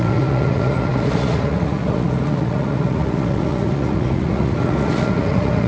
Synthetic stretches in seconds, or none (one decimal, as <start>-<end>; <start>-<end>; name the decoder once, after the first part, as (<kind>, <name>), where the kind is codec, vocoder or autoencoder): 0.0-5.7 (vocoder, Vocos)